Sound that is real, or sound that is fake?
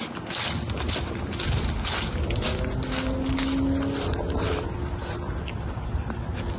real